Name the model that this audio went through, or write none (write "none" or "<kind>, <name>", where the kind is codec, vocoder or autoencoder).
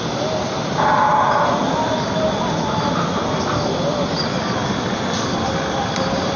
none